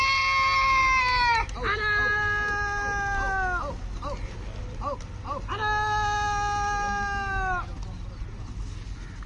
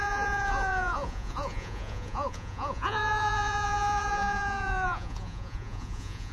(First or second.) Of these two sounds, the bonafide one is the first